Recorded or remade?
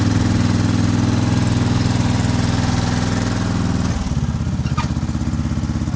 recorded